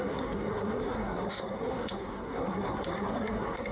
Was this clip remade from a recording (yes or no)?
yes